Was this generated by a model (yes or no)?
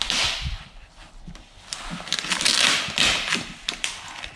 yes